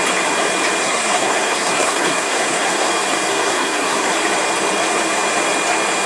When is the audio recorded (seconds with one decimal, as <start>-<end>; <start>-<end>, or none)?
0.0-0.8; 2.9-3.3; 4.1-6.1